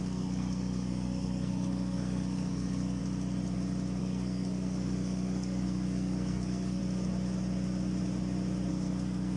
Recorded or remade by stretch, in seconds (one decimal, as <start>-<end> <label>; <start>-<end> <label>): 0.0-3.0 remade; 3.0-4.0 recorded; 4.0-6.8 remade; 6.8-8.7 recorded; 8.7-9.4 remade